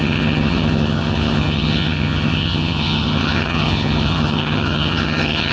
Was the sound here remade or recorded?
remade